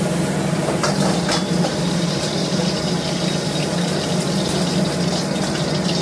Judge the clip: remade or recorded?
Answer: recorded